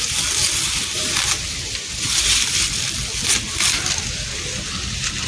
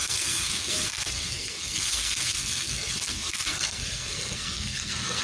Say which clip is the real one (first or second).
first